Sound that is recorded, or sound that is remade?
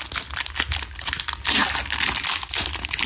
recorded